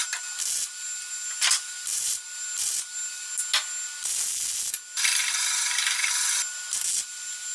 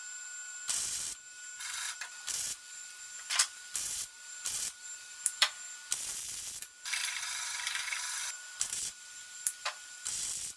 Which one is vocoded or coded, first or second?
second